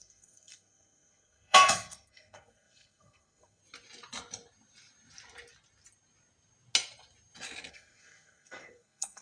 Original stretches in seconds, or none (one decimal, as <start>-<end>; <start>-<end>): 3.6-7.7